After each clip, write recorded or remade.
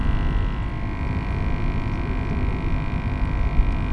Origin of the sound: recorded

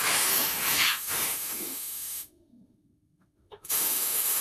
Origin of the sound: remade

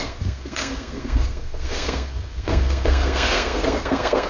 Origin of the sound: remade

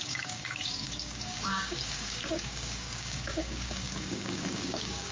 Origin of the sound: remade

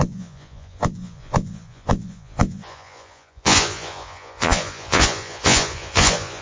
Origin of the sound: remade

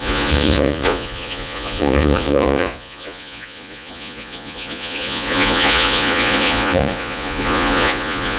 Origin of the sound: remade